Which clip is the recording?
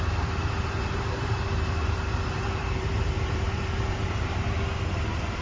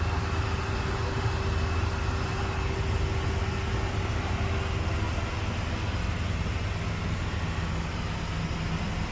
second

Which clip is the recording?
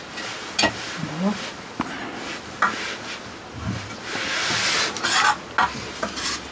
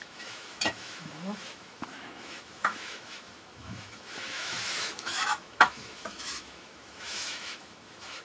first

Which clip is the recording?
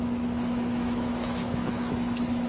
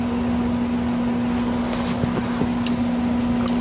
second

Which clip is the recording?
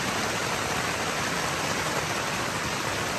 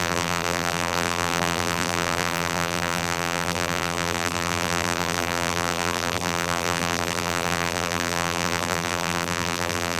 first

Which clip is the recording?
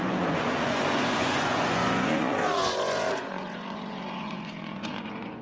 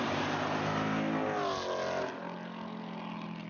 second